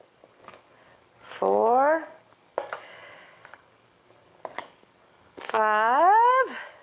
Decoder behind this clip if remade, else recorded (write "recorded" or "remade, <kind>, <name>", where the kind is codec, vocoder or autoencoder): remade, codec, DAC